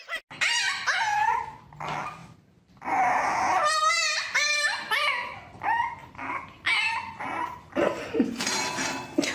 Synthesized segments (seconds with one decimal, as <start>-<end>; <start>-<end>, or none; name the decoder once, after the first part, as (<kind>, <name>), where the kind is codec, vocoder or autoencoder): none